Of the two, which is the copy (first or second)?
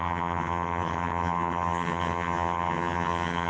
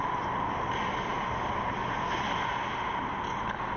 first